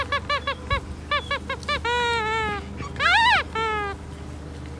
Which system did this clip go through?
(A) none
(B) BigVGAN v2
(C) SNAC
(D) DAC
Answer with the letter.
A